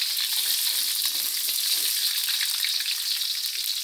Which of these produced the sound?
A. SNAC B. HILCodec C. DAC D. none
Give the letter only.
D